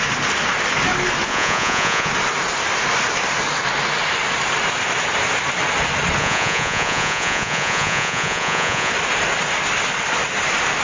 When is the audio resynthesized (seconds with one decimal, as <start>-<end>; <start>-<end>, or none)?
1.3-2.1; 6.2-8.9

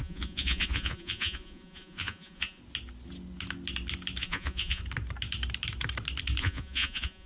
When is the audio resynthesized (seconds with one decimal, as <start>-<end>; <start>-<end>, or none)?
0.0-2.6; 4.2-4.8; 6.4-7.3

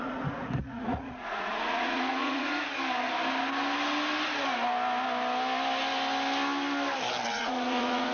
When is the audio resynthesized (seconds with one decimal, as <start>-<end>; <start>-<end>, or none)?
0.0-2.6; 7.3-8.1

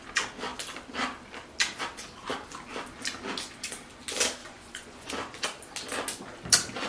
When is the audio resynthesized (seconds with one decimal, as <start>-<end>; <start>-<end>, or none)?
4.4-5.1

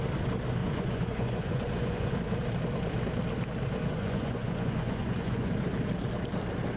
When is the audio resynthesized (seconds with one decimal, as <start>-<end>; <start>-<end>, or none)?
0.6-2.1; 3.9-5.5

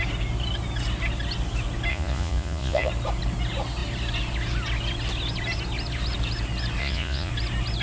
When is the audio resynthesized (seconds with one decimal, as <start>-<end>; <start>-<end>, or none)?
1.9-2.9; 6.8-7.3